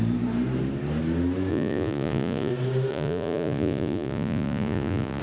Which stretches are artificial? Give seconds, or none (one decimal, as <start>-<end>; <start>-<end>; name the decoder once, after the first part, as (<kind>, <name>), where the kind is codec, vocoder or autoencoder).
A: 1.5-2.5 (vocoder, Vocos); 2.9-5.2